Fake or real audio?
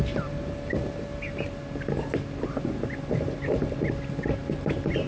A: fake